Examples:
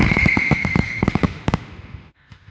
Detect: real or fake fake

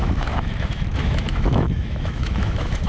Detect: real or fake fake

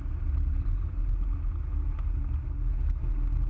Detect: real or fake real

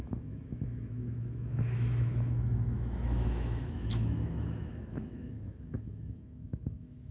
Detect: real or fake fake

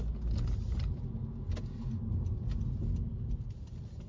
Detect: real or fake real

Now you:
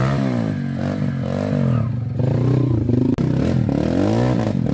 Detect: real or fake real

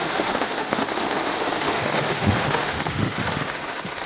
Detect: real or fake fake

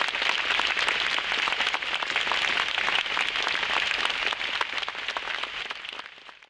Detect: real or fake real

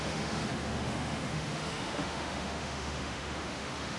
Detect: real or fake fake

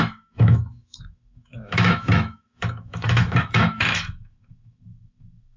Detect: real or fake fake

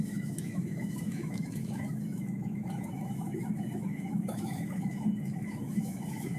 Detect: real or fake fake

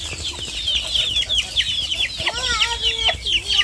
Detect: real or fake real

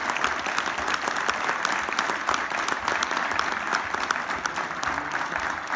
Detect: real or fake real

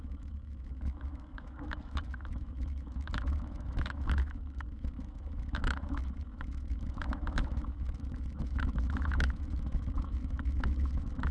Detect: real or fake fake